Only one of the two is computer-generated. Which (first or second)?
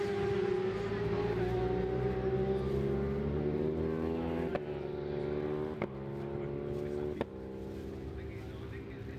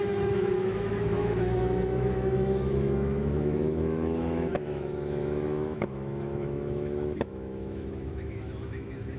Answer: second